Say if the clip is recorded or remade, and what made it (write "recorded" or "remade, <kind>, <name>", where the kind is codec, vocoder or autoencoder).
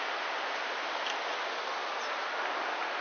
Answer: recorded